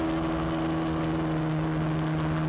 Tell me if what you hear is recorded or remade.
recorded